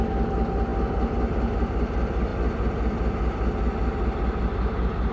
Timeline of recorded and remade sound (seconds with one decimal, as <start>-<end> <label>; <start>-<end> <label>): 0.0-5.1 recorded

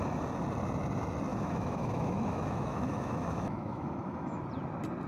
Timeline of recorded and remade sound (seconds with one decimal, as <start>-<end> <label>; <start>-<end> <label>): 0.0-1.3 recorded; 1.3-4.4 remade; 4.4-5.1 recorded

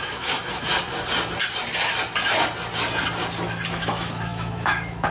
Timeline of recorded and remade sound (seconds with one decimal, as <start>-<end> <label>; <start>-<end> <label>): 0.0-0.7 remade; 0.7-3.8 recorded; 3.8-5.1 remade

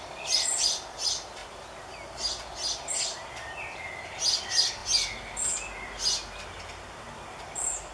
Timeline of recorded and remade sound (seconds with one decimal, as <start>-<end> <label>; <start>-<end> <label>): 0.0-7.9 recorded